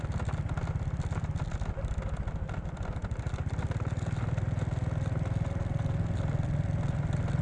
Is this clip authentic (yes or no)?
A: yes